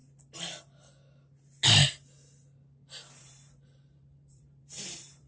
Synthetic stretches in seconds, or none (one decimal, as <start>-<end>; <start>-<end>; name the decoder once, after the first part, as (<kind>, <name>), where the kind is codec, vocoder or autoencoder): 3.2-5.3 (vocoder, BigVGAN v2)